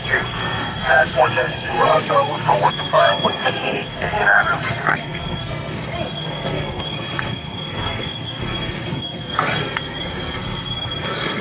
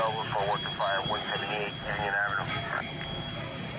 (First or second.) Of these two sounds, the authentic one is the second